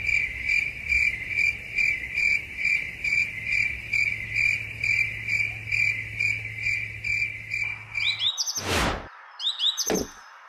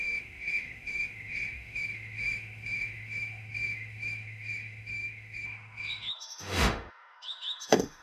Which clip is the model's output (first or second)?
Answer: second